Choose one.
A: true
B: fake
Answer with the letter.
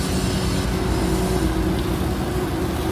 A